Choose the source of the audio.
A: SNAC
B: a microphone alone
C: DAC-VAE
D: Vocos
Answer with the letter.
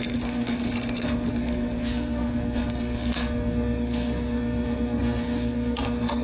A